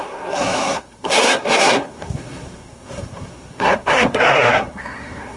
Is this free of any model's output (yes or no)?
no